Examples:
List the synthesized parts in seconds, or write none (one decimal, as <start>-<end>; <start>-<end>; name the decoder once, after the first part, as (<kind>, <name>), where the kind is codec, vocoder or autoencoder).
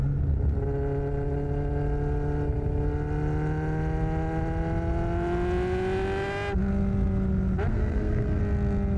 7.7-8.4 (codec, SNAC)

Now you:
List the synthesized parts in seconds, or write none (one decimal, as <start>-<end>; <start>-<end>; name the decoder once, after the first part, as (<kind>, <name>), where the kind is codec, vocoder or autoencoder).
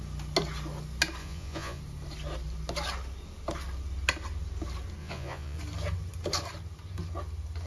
1.2-1.8 (vocoder, Vocos); 5.0-5.6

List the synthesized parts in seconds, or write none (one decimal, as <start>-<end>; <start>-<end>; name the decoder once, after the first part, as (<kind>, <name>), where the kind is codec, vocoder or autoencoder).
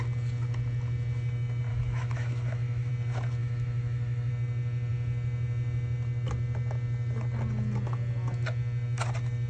1.7-2.9 (autoencoder, DAC-VAE); 3.4-4.3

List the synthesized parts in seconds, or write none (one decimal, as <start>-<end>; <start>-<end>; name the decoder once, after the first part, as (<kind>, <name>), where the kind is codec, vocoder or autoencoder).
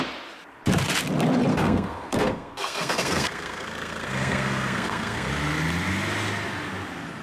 1.5-5.3 (codec, SNAC)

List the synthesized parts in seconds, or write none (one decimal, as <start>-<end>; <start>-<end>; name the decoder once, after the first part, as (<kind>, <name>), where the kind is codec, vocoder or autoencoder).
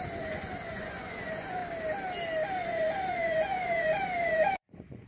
0.0-1.6 (vocoder, Vocos); 2.5-5.1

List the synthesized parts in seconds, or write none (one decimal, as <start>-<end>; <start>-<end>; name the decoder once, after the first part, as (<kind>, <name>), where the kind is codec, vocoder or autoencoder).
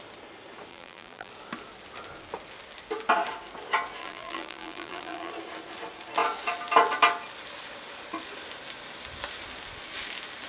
0.7-1.3 (vocoder, BigVGAN v2); 4.0-5.3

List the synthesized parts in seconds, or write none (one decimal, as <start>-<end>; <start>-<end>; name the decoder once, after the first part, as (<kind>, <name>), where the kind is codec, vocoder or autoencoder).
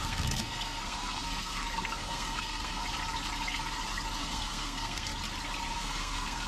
0.0-2.8 (codec, SNAC); 4.2-5.1; 5.7-6.5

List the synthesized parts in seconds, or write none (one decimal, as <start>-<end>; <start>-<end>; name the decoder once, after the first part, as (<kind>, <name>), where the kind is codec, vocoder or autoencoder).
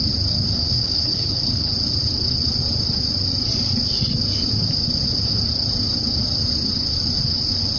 0.7-1.7 (codec, HILCodec)